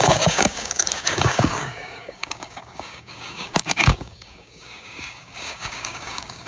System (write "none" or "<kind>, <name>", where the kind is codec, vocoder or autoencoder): codec, DAC